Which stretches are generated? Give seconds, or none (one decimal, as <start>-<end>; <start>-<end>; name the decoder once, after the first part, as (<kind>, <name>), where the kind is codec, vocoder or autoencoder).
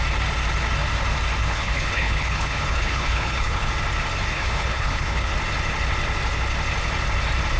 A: 1.4-3.7 (codec, HILCodec); 4.3-5.3